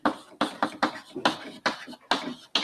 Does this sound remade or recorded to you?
recorded